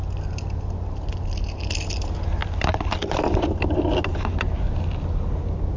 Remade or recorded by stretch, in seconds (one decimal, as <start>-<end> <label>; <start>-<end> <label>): 0.0-5.8 recorded